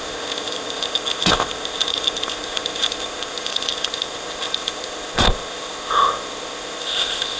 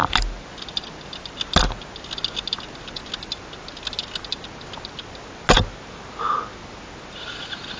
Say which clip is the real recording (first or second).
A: second